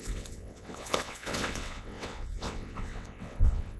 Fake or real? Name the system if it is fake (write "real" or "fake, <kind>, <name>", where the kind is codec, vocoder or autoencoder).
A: fake, vocoder, WaveNeXt